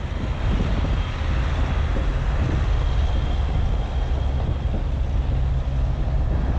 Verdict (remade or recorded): recorded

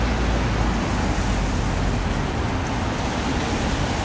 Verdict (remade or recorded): recorded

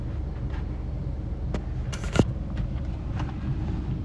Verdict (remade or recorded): recorded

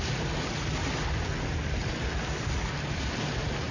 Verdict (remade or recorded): recorded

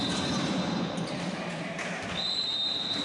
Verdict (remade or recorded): remade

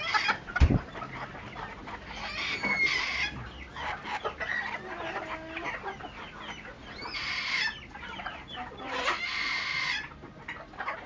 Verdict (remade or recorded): recorded